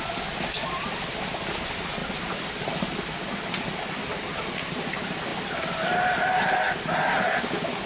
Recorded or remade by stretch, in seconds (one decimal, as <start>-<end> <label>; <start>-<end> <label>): 0.0-2.0 recorded; 2.0-4.3 remade; 4.3-7.9 recorded